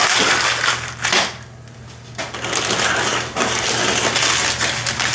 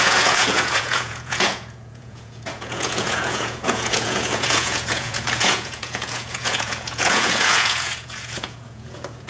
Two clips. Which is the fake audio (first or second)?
second